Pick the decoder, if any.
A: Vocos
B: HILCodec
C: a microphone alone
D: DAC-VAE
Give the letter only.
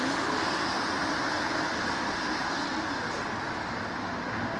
C